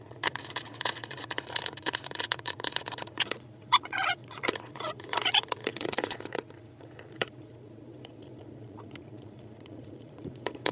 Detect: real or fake fake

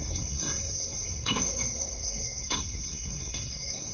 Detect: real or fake fake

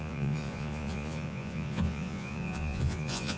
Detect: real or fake fake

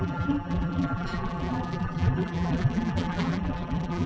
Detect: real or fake fake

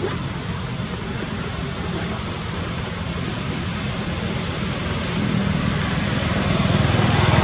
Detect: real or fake real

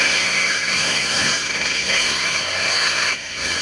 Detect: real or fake fake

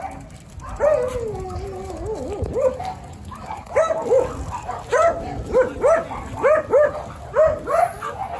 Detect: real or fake real